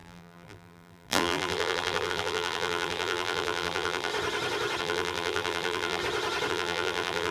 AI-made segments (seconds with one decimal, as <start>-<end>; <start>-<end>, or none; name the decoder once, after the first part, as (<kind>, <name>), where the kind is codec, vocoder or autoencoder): 0.0-4.1 (vocoder, BigVGAN v2); 4.8-6.0; 6.5-7.3